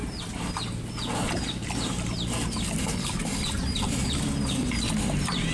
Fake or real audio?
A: real